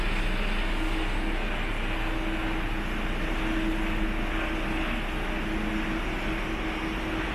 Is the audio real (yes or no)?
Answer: yes